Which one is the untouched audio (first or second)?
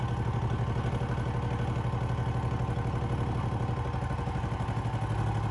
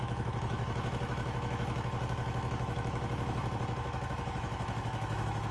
first